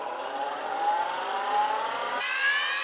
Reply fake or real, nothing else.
real